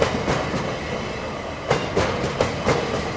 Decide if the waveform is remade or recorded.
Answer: recorded